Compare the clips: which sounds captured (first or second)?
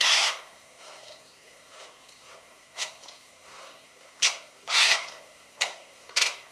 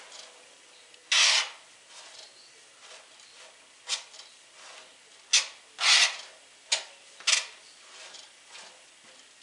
second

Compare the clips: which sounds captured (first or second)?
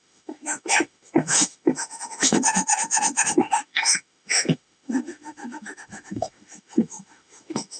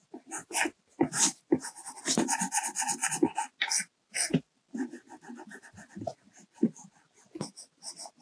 second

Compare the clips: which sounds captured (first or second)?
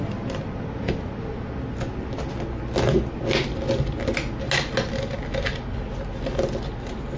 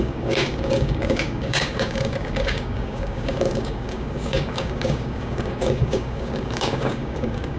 first